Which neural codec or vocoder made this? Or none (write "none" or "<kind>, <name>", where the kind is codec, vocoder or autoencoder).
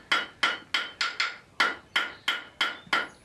none